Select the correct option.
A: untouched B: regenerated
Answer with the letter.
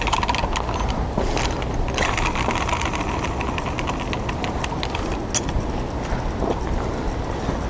A